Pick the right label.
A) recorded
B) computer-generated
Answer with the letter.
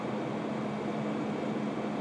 A